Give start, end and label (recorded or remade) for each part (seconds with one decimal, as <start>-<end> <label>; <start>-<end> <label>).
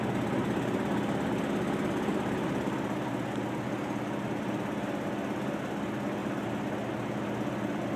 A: 0.0-8.0 recorded